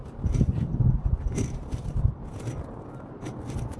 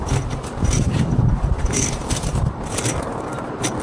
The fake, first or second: second